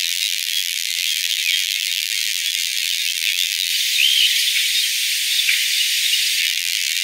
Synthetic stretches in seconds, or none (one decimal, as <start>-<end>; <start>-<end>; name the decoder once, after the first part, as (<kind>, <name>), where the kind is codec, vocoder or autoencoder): 0.0-3.7 (vocoder, BigVGAN v2); 6.4-7.0